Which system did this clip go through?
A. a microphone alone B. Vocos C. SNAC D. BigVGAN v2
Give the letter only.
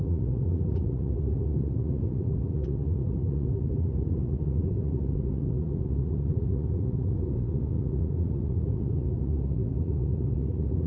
B